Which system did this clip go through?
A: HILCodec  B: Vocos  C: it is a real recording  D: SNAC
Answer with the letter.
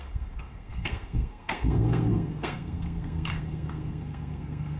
D